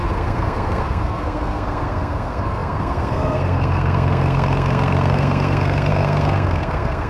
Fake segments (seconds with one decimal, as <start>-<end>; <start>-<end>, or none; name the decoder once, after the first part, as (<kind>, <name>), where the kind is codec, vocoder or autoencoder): 0.0-7.1 (codec, SNAC)

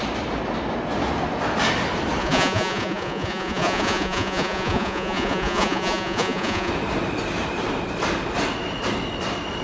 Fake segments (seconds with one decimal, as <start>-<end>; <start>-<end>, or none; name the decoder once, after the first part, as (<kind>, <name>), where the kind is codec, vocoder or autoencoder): 2.2-6.7 (vocoder, Vocos)

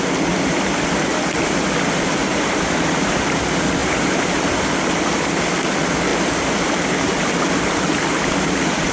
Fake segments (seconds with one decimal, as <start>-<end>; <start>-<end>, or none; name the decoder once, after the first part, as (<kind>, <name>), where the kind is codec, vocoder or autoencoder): 2.2-3.1 (vocoder, BigVGAN v2); 3.8-4.3

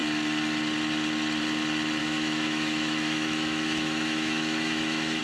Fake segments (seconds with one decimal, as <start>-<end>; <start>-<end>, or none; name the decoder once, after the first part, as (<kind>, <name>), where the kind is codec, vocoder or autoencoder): 2.0-5.2 (autoencoder, DAC-VAE)

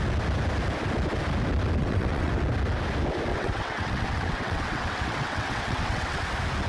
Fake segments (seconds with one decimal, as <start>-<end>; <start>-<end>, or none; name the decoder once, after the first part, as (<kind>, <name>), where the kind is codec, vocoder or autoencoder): 1.8-2.3 (vocoder, WaveNeXt); 3.3-6.2

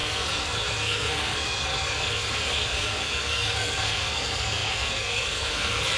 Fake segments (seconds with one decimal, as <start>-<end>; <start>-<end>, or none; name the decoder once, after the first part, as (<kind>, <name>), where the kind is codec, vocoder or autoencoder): 0.0-6.0 (codec, SNAC)

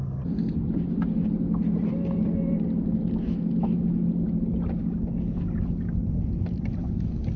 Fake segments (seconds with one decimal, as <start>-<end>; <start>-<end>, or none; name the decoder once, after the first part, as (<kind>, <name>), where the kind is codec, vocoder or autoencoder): none

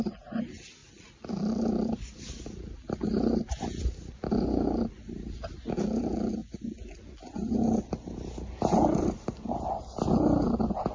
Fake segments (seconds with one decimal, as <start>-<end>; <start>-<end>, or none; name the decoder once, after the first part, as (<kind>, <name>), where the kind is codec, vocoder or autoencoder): none